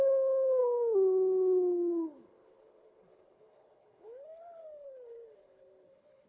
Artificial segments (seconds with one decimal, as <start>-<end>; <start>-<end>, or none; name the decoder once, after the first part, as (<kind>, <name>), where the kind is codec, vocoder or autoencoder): 0.0-6.3 (codec, HILCodec)